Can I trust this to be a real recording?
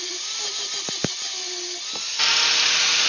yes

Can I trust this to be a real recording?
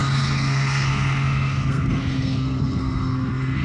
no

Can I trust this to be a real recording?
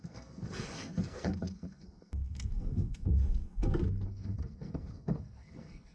no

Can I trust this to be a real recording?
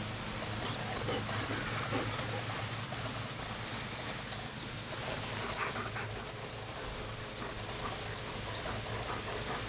yes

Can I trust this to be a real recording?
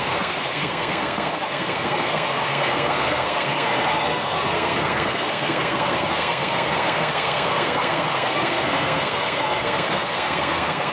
no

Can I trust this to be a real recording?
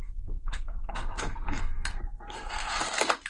no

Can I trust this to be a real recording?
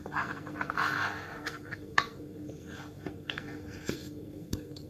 no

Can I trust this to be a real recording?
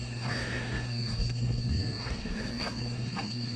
no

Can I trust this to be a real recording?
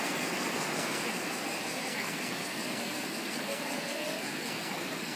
no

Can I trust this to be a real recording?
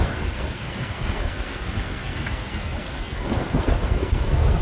no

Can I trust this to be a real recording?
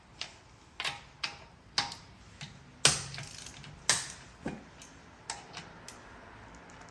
yes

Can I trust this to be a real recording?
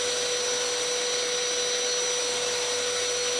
yes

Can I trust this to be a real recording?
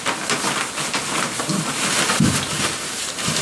yes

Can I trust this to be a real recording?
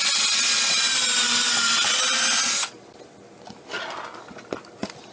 yes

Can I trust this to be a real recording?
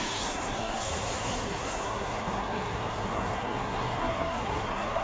no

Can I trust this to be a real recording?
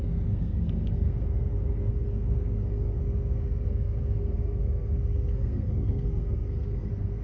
no